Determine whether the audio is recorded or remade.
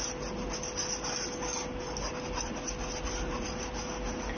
recorded